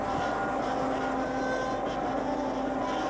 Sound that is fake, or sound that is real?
real